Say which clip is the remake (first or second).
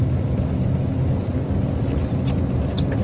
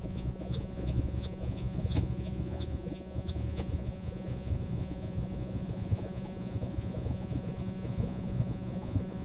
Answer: second